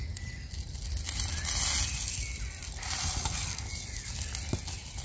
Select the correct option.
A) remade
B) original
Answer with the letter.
B